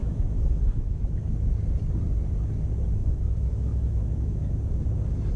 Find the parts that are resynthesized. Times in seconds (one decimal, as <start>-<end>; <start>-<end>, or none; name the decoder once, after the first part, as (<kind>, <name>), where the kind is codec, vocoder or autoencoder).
0.0-1.0 (autoencoder, DAC-VAE); 3.0-4.5

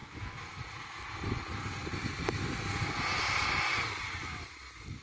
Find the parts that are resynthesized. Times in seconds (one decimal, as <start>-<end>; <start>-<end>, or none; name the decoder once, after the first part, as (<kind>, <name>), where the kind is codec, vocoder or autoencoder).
0.0-0.6 (autoencoder, DAC-VAE)

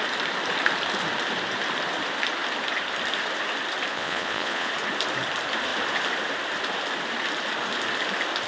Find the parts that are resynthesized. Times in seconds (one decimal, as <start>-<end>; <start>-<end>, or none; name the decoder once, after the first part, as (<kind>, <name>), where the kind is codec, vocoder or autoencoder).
3.9-4.7 (vocoder, Vocos)

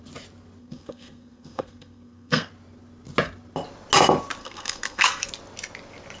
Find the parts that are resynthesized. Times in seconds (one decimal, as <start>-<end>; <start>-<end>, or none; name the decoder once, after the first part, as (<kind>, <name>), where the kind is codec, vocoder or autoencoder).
0.6-2.5 (codec, SNAC); 4.4-5.3

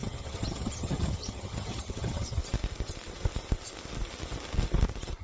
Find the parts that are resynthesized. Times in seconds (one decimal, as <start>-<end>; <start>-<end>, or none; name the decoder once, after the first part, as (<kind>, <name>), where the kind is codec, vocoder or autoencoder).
0.0-2.4 (vocoder, HiFi-GAN)

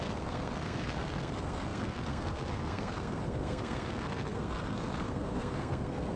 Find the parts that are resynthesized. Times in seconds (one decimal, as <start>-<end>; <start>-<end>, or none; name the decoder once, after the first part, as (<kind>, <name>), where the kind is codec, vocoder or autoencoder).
0.0-6.2 (codec, SNAC)

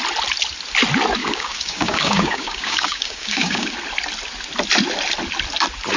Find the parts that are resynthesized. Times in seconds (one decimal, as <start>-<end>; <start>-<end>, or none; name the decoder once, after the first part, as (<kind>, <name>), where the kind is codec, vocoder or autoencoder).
1.2-3.7 (codec, DAC)

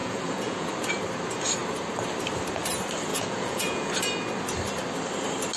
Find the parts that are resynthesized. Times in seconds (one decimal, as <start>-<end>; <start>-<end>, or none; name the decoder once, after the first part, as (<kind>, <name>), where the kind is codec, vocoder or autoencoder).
0.0-0.7 (vocoder, Vocos); 3.1-3.9